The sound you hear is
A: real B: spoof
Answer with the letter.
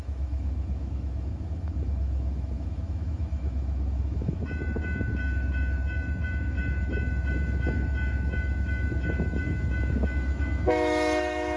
B